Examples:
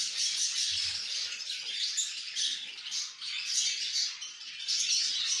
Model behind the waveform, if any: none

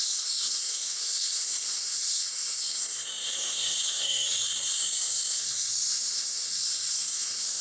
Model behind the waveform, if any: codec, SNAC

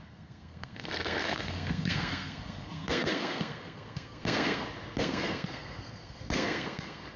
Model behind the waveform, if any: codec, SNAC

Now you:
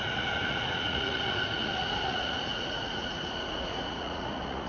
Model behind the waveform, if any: vocoder, Vocos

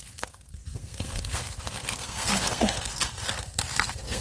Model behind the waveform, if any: codec, SNAC